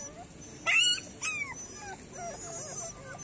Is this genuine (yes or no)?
yes